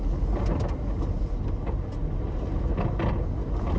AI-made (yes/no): no